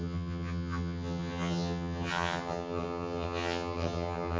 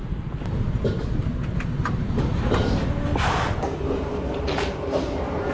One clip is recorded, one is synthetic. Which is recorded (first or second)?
second